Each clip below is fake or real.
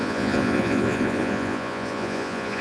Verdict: fake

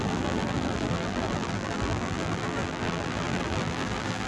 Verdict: fake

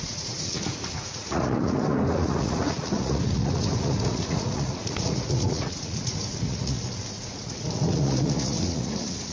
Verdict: fake